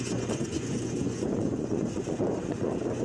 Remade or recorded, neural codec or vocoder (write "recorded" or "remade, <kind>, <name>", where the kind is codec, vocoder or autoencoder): remade, vocoder, Vocos